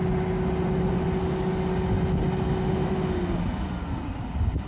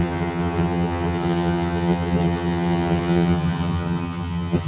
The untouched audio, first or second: first